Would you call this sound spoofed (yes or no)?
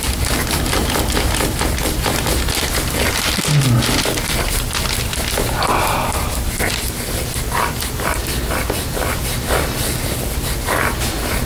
no